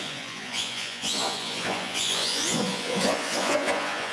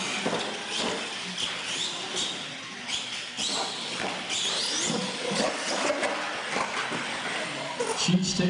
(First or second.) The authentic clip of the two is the second